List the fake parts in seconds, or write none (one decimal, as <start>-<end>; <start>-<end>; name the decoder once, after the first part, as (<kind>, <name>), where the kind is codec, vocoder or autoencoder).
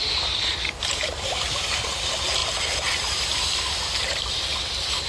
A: 0.0-5.1 (vocoder, BigVGAN v2)